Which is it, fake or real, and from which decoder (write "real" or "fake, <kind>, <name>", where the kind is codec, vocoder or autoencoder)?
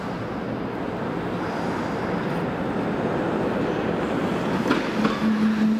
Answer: real